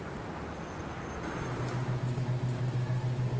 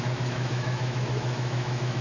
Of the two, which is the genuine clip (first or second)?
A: first